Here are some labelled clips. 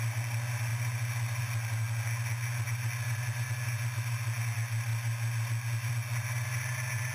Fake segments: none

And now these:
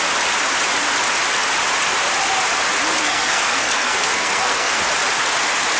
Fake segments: 3.0-4.8 (codec, SNAC)